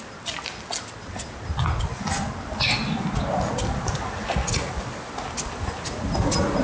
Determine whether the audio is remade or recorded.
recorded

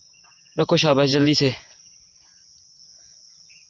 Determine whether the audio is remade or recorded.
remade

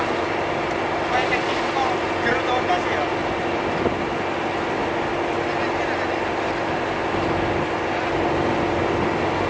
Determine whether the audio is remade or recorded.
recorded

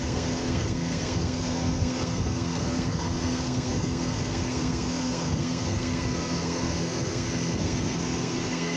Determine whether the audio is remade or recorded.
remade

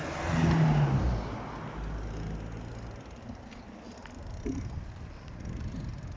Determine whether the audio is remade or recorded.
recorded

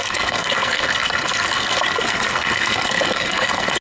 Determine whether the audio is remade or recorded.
remade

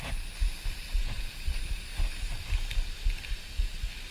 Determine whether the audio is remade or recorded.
recorded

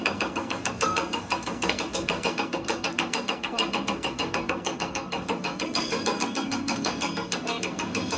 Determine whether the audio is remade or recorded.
remade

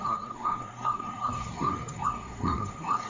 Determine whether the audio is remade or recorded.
remade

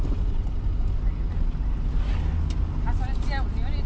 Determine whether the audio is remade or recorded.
recorded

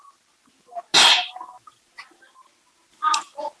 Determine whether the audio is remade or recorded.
recorded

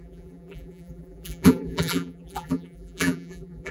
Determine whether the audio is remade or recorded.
remade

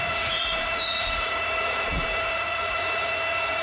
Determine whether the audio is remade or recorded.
remade